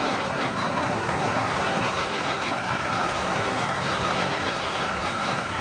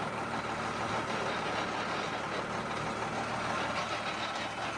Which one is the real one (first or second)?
second